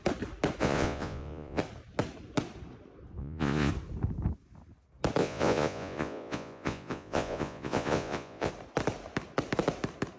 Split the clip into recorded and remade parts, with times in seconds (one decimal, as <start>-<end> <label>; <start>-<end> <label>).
0.0-0.6 recorded; 0.6-1.6 remade; 1.6-3.2 recorded; 3.2-3.7 remade; 3.7-5.2 recorded; 5.2-8.5 remade; 8.5-10.2 recorded